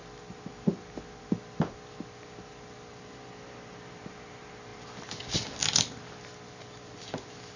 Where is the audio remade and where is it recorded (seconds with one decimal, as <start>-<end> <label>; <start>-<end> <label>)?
0.0-7.6 recorded